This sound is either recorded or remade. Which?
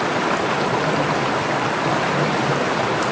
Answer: recorded